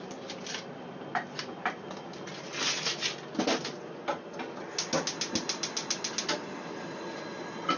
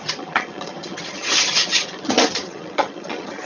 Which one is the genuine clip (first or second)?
first